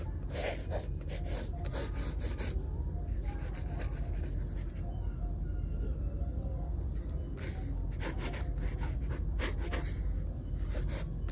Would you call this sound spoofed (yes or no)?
no